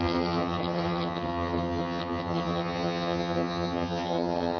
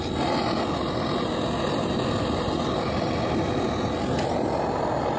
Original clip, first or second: second